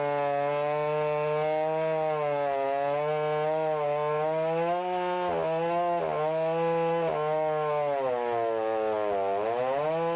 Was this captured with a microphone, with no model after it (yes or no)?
yes